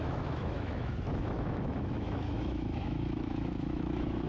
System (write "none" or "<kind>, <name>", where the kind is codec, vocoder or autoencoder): autoencoder, DAC-VAE